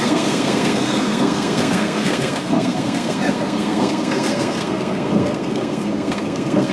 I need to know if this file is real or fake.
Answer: fake